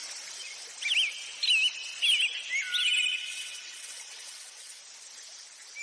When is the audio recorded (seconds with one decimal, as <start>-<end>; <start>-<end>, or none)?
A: 0.0-3.1; 4.8-5.8